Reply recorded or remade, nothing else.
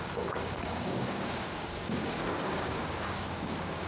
remade